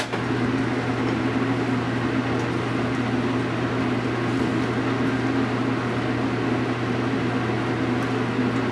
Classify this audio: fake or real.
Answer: real